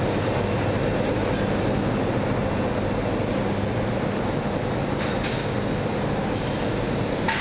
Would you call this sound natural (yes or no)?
yes